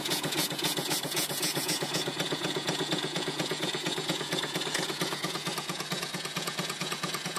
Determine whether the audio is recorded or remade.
remade